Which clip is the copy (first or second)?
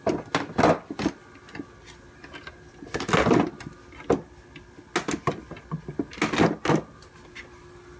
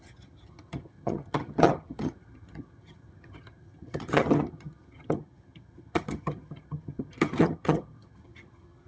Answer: second